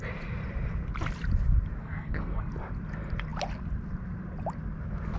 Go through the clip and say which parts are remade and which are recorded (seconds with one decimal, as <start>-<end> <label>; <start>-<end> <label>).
0.0-1.8 recorded; 1.8-2.5 remade; 2.5-5.2 recorded